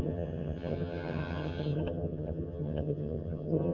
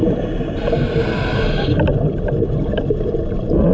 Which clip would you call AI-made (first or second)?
first